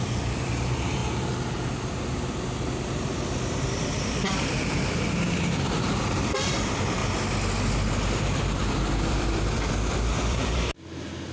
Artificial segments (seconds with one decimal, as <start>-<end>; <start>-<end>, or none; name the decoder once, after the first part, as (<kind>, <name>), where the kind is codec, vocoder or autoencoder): 0.0-1.0 (vocoder, BigVGAN v2); 3.6-7.0; 7.9-11.3